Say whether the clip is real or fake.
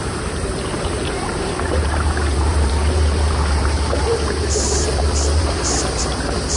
fake